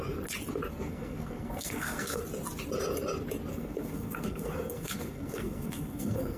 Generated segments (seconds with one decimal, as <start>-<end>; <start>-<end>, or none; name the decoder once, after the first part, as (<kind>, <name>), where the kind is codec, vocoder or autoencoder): 0.7-2.2 (codec, SNAC); 3.5-6.4